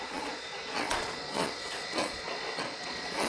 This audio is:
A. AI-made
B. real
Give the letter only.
A